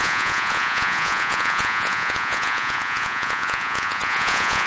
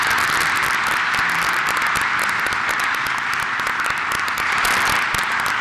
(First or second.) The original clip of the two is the second